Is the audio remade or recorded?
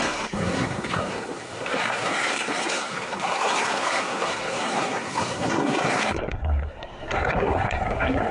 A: remade